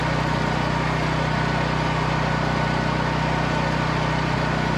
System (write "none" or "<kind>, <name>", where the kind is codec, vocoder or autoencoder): none